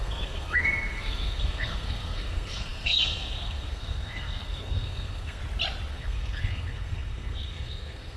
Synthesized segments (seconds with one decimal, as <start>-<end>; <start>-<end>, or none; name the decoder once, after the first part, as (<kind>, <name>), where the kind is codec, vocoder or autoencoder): 0.0-5.4 (codec, SNAC); 5.9-8.2